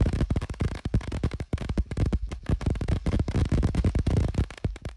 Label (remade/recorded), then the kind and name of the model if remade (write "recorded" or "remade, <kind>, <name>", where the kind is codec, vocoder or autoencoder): remade, codec, DAC